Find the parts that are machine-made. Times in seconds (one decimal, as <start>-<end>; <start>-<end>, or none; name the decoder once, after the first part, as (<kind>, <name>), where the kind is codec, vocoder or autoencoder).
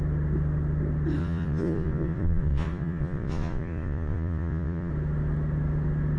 1.2-4.9 (vocoder, Vocos)